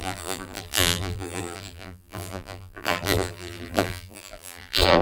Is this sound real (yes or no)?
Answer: no